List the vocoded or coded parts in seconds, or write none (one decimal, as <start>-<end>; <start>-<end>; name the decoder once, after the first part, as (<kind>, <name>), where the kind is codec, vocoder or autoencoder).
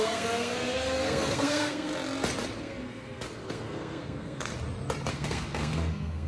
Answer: 0.0-1.9 (codec, SNAC); 2.6-4.5; 5.1-6.3